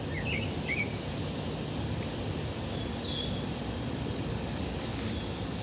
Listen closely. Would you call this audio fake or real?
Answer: real